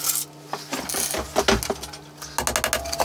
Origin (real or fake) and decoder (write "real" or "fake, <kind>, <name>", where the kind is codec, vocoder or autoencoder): real